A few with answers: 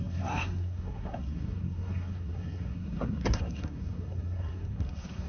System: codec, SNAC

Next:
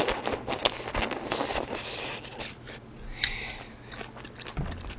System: none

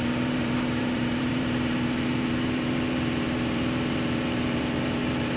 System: vocoder, BigVGAN v2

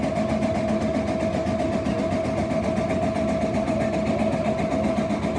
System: none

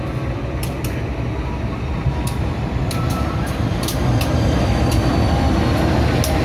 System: none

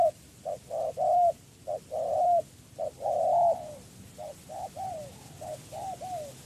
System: none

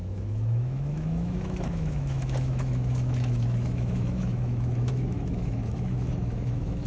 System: autoencoder, DAC-VAE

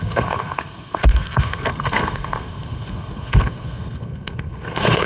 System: codec, SNAC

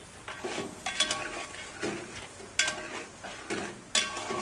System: none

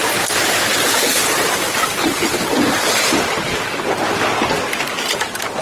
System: none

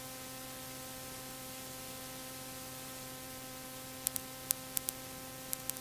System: vocoder, BigVGAN v2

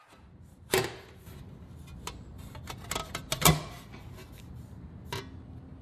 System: none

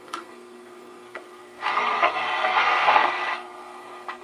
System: codec, SNAC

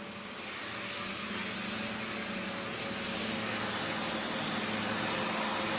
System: none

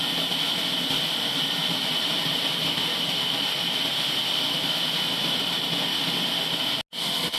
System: none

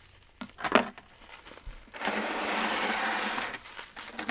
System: none